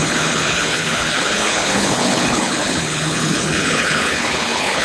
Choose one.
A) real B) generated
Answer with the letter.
B